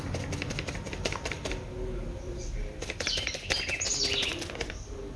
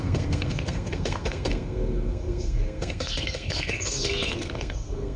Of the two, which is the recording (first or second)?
first